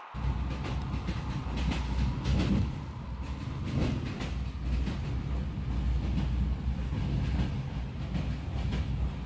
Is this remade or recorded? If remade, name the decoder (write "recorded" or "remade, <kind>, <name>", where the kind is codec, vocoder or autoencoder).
recorded